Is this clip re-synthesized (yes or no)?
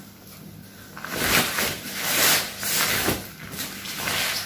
no